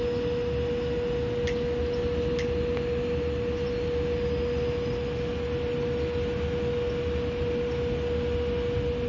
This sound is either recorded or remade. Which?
recorded